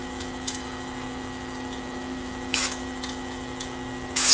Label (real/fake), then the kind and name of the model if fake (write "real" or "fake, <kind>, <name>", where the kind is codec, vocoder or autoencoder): fake, autoencoder, DAC-VAE